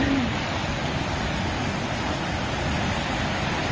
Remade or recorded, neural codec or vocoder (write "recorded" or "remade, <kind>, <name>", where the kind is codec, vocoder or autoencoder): recorded